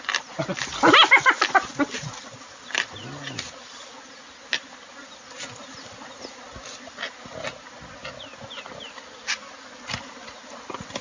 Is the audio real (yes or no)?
yes